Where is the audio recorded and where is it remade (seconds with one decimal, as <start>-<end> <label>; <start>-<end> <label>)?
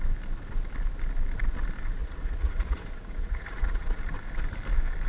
0.0-2.0 recorded; 2.0-4.0 remade; 4.0-5.1 recorded